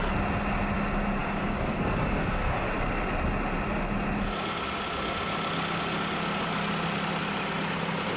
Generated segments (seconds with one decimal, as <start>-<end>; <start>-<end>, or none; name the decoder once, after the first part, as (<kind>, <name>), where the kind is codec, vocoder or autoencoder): 1.2-2.7 (codec, DAC)